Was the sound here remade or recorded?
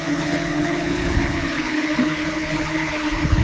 remade